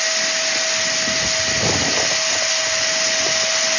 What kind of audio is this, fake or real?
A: real